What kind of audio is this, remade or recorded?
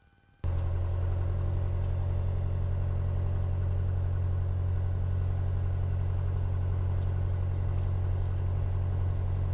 recorded